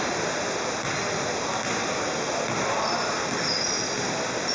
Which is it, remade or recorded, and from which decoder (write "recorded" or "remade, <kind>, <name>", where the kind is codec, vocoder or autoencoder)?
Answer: recorded